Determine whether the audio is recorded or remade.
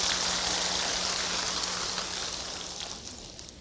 recorded